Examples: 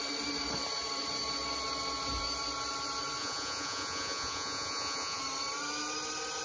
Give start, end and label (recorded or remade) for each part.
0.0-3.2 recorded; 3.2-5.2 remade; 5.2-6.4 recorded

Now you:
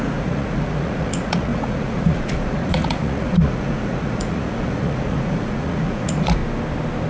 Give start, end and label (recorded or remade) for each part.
0.0-6.4 remade; 6.4-7.1 recorded

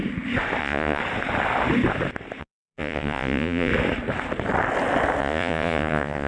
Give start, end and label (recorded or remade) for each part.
0.0-0.6 recorded; 0.6-1.0 remade; 1.0-2.4 recorded; 2.4-3.7 remade; 3.7-5.2 recorded; 5.2-6.3 remade

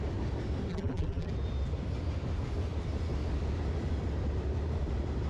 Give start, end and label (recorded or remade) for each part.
0.0-0.7 recorded; 0.7-1.3 remade; 1.3-5.3 recorded

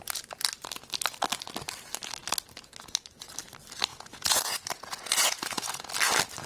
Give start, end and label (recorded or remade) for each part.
0.0-3.9 recorded; 3.9-5.9 remade; 5.9-6.5 recorded

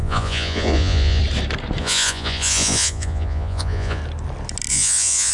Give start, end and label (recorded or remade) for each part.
0.0-1.2 remade; 1.2-1.8 recorded; 1.8-4.0 remade; 4.0-4.7 recorded; 4.7-5.3 remade

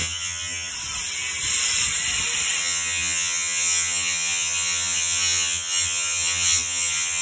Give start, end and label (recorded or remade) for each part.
0.0-0.7 remade; 0.7-2.6 recorded; 2.6-7.2 remade

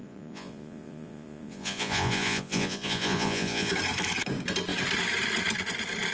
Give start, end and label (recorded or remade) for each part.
0.0-3.7 remade; 3.7-6.1 recorded